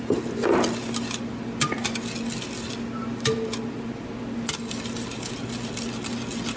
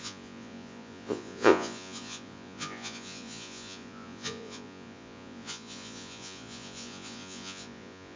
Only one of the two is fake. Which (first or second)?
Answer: second